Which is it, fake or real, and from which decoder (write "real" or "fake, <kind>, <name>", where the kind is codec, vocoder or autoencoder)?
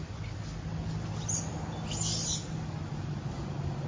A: real